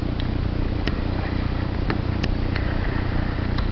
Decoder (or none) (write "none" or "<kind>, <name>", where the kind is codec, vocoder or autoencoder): none